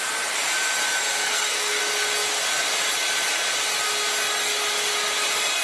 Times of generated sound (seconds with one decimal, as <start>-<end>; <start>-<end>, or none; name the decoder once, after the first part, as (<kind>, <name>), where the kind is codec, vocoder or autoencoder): 1.1-1.8 (codec, SNAC)